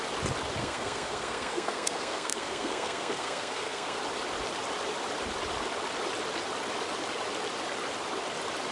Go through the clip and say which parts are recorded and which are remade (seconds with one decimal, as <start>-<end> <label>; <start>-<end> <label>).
0.0-0.6 recorded; 0.6-4.0 remade; 4.0-8.7 recorded